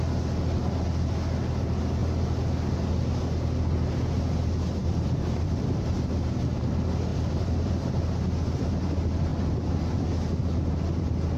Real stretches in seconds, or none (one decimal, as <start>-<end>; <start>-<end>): 0.0-4.8; 5.9-7.1; 7.9-11.4